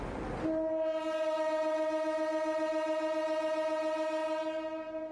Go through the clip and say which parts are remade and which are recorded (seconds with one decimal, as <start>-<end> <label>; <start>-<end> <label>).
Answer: 0.0-5.1 recorded